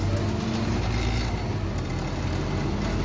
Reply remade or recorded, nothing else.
recorded